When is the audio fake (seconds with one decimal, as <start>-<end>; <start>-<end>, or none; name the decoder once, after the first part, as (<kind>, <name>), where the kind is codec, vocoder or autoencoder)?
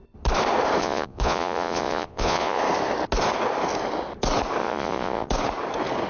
0.8-2.6 (vocoder, Vocos); 4.6-5.3